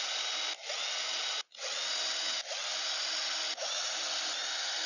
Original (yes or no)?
yes